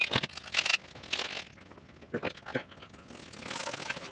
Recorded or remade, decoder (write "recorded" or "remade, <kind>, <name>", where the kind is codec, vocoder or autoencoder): recorded